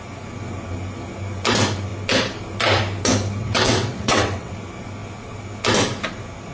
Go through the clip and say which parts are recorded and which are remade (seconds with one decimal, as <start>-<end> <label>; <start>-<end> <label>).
0.0-3.4 recorded; 3.4-4.5 remade; 4.5-6.5 recorded